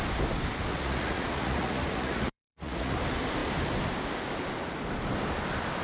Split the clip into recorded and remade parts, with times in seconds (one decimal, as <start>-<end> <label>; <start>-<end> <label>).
0.0-0.7 recorded; 0.7-2.9 remade; 2.9-5.8 recorded